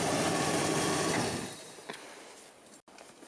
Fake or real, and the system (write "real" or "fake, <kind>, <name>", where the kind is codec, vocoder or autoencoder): real